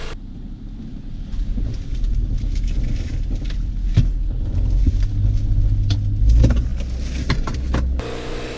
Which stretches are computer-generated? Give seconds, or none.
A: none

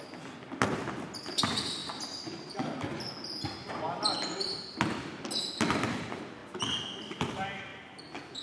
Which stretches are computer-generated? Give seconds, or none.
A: none

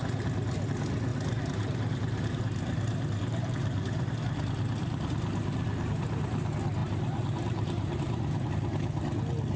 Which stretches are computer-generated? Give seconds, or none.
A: 1.1-4.2 (vocoder, BigVGAN v2); 6.8-8.5

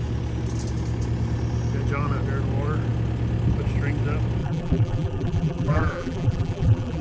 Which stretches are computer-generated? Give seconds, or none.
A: 4.4-7.0 (vocoder, BigVGAN v2)